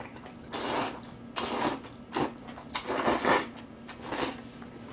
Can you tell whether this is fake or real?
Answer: real